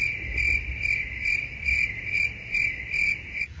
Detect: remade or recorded recorded